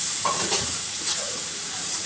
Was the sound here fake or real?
fake